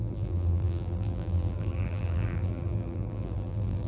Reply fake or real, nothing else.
fake